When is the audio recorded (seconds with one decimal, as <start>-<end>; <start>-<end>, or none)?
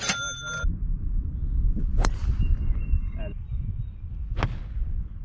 0.0-5.2